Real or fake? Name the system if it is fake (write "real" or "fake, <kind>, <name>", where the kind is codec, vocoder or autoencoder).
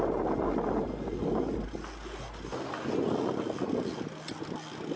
real